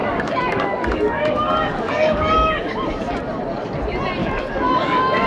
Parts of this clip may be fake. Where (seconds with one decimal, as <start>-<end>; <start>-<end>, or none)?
0.0-3.2; 4.2-5.3